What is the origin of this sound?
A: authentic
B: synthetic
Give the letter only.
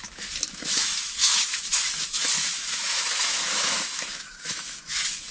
B